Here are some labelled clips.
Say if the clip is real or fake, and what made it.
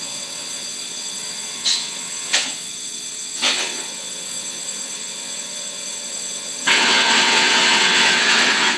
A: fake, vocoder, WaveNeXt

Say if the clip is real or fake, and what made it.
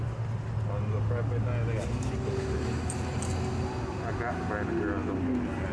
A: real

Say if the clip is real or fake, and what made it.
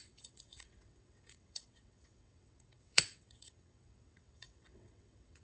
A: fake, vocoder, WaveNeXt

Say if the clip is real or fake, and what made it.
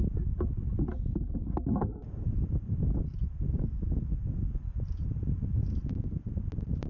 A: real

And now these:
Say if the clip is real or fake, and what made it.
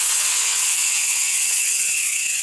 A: fake, vocoder, WaveNeXt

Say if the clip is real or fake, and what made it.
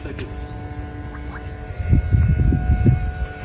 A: real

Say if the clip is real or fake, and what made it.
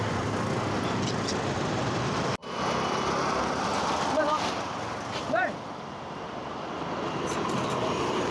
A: real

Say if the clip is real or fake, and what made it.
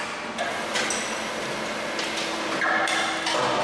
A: real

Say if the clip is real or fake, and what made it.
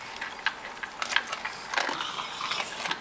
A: real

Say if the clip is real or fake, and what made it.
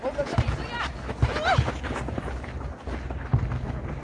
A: real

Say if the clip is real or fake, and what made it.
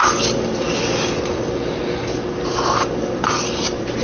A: real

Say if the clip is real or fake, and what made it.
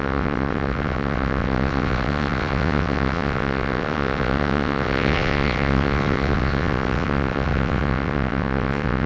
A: fake, vocoder, WaveNeXt